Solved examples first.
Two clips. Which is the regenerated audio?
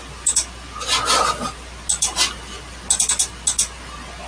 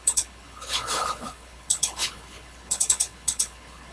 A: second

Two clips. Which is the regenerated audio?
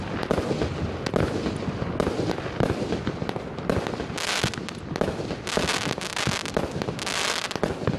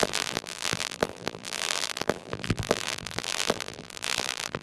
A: second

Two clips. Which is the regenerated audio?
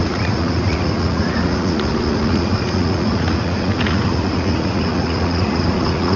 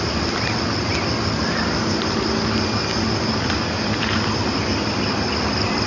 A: first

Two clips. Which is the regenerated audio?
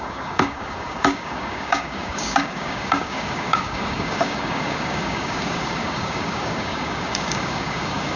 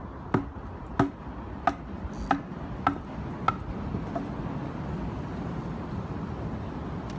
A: first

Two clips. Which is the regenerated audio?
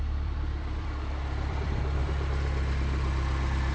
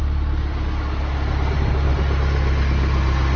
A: first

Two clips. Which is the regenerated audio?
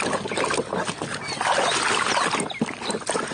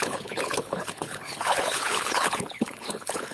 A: second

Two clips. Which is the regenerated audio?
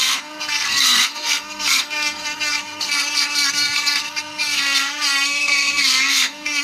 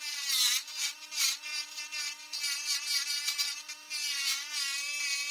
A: first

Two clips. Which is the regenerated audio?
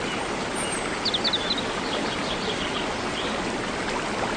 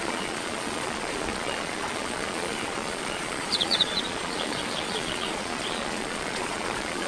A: second